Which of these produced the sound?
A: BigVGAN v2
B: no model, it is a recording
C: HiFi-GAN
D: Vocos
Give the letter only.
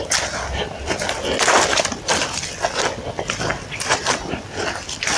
B